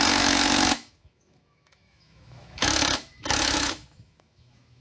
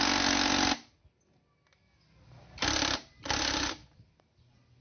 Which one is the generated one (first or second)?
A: first